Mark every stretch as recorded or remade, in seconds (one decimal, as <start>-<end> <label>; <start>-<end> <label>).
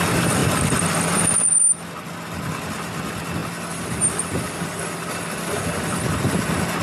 0.0-6.8 recorded